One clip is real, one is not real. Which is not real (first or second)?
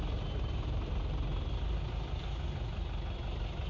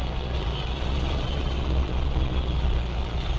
second